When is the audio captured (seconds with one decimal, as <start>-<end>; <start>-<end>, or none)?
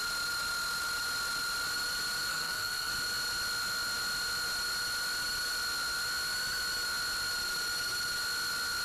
0.0-2.3; 2.9-8.8